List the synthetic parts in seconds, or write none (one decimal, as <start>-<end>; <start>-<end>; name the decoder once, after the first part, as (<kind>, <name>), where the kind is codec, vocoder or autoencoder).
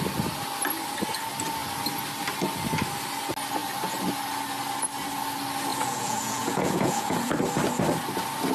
5.7-7.3 (vocoder, Vocos)